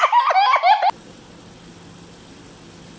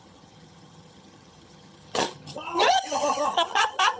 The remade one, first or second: second